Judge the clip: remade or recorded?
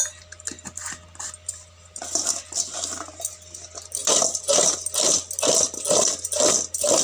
recorded